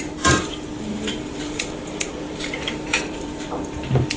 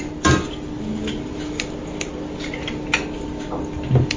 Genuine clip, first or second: second